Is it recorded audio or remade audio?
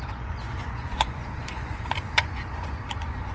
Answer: remade